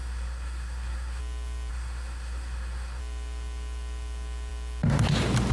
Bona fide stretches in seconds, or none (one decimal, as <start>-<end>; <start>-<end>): 1.2-1.7; 3.0-5.5